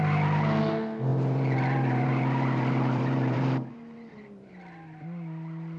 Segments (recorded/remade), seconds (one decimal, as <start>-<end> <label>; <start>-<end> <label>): 0.0-1.1 recorded; 1.1-4.5 remade; 4.5-5.8 recorded